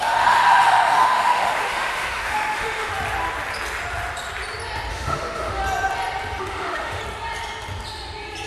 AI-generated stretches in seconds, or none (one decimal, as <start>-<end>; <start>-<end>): 0.0-2.9; 4.9-5.6; 6.4-7.0